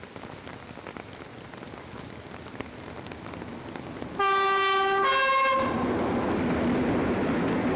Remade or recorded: recorded